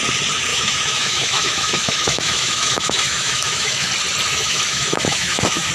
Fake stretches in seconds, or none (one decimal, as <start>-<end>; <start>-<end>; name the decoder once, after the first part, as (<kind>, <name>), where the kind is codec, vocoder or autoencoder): 0.5-3.9 (autoencoder, DAC-VAE); 4.3-5.7

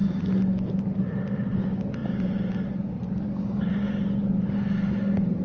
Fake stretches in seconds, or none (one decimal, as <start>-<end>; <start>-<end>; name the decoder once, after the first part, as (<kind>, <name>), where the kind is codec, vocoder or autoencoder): none